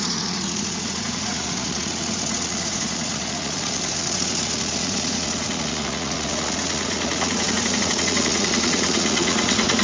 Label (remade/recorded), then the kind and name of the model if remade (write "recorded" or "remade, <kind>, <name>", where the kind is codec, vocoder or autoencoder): remade, vocoder, Vocos